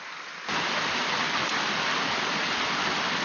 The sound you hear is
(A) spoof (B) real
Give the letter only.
B